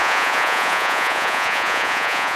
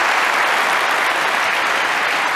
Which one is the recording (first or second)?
second